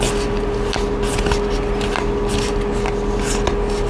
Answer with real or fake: real